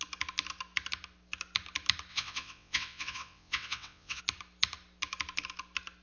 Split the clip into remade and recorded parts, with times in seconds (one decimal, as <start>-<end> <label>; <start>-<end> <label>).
0.0-2.1 recorded; 2.1-4.2 remade; 4.2-6.0 recorded